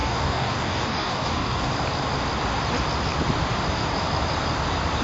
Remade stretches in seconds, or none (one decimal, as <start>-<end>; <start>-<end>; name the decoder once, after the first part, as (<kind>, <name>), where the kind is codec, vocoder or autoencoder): 0.0-1.7 (codec, DAC)